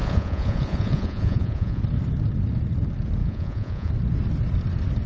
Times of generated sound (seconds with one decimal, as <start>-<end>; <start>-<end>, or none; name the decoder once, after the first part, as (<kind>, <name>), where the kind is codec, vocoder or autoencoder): 0.0-1.8 (vocoder, Vocos); 3.2-3.9